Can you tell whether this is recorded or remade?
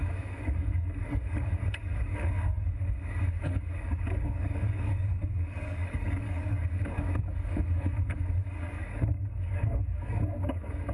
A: remade